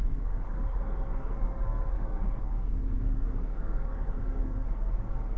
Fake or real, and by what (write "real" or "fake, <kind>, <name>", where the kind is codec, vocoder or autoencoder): fake, codec, SNAC